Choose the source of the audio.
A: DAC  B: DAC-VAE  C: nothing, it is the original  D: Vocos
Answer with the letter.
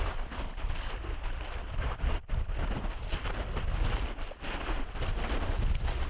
C